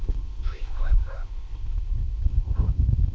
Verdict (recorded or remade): remade